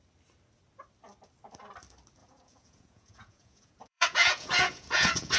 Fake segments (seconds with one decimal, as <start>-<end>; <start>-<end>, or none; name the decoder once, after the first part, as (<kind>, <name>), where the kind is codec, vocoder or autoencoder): 2.2-5.4 (vocoder, Vocos)